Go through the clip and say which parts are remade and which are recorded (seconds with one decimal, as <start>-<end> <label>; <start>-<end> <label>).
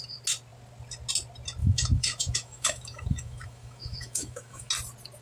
0.0-1.6 recorded; 1.6-4.7 remade; 4.7-5.2 recorded